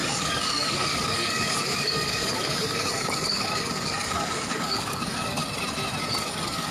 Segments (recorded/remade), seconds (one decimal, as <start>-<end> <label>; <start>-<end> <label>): 0.0-5.4 remade; 5.4-6.2 recorded; 6.2-6.7 remade